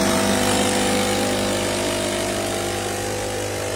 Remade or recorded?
recorded